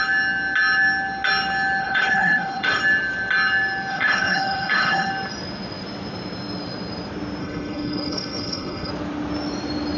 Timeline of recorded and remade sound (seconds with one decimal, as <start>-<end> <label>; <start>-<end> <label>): 0.0-1.8 recorded; 1.8-2.8 remade; 2.8-3.9 recorded; 3.9-5.1 remade; 5.1-7.4 recorded; 7.4-8.9 remade; 8.9-10.0 recorded